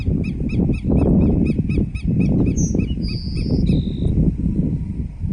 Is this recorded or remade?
recorded